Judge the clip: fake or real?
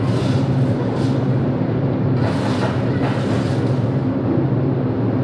real